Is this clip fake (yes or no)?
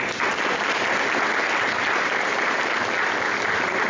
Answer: no